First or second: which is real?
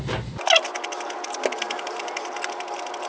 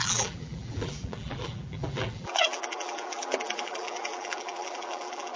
first